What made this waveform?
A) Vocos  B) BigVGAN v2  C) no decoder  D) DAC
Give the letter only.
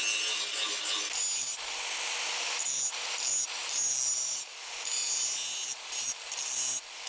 C